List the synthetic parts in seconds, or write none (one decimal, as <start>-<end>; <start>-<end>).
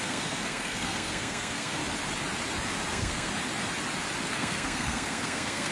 0.0-1.8; 2.9-3.3; 4.3-5.7